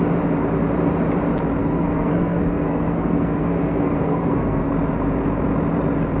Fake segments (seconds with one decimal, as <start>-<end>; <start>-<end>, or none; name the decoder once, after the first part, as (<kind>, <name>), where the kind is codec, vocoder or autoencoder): 1.6-4.7 (codec, SNAC)